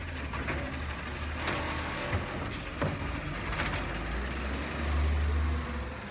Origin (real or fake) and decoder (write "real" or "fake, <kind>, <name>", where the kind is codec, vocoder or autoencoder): real